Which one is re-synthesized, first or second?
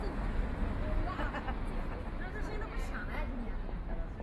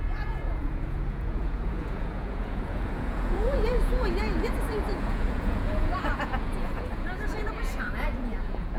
second